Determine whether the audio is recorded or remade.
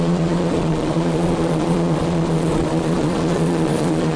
remade